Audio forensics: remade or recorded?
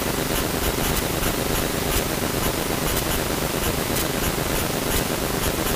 recorded